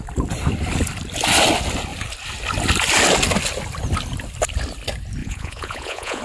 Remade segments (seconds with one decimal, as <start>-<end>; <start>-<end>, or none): 5.2-6.2